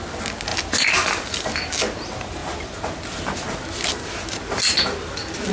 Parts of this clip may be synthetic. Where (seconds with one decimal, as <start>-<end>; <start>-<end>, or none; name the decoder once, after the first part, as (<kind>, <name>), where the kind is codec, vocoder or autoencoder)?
none

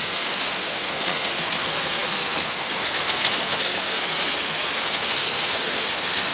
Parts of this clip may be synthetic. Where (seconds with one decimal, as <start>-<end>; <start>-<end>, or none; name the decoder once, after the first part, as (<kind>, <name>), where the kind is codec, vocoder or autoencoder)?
0.0-6.3 (codec, SNAC)

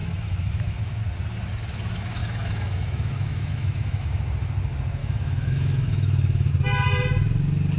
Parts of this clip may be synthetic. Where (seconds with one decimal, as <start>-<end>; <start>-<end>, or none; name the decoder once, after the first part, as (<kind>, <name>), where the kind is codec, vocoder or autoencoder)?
0.0-0.8 (autoencoder, DAC-VAE); 2.2-4.2; 5.0-6.5

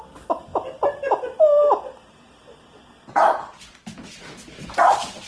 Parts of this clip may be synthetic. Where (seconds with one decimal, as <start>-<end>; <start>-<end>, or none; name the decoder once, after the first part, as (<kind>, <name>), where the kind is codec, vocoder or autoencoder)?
0.5-3.7 (vocoder, BigVGAN v2)

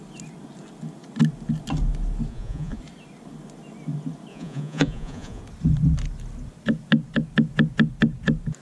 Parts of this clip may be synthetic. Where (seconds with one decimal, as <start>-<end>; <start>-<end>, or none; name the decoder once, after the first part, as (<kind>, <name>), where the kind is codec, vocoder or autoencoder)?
2.3-2.8 (vocoder, Vocos); 4.3-5.4

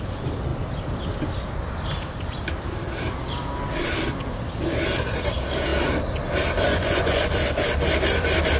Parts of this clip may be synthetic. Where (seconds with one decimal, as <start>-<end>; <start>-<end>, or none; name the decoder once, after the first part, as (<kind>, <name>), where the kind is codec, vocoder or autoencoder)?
6.7-7.3 (vocoder, Vocos)